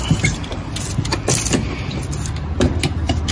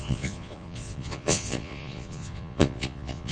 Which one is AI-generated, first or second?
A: second